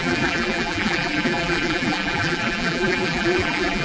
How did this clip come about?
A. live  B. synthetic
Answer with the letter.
B